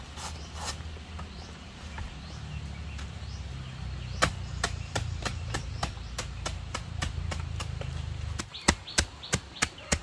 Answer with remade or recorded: recorded